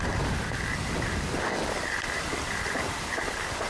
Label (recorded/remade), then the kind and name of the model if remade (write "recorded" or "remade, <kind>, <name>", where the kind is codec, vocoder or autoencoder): recorded